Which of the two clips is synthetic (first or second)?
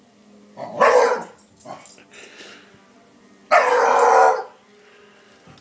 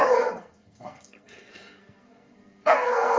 second